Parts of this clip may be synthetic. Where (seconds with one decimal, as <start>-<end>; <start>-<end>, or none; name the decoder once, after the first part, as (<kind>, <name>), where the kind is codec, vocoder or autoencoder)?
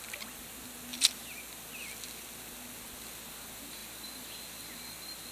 0.9-1.4 (vocoder, BigVGAN v2)